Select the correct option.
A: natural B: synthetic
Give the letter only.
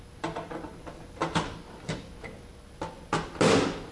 A